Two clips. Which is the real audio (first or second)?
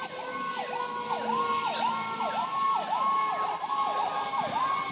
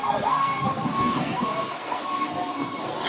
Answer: first